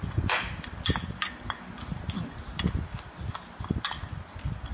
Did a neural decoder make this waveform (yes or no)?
no